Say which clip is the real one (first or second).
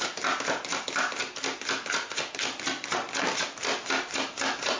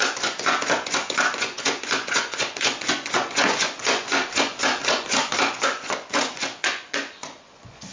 first